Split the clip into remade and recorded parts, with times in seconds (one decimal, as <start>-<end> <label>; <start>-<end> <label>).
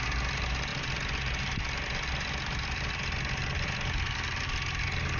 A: 0.0-5.2 recorded